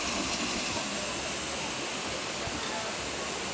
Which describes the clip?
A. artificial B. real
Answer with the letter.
B